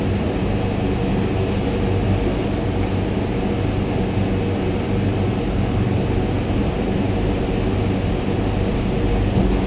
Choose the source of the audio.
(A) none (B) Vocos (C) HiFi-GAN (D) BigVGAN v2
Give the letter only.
A